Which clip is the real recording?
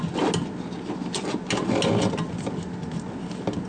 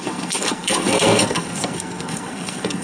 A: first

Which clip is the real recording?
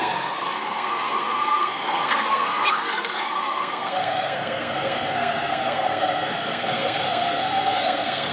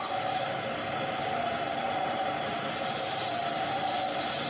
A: second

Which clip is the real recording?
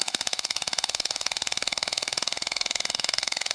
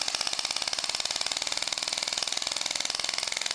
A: second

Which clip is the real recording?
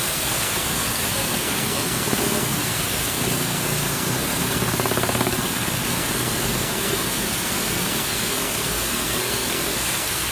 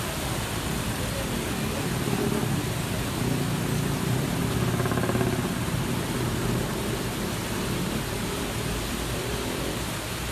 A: second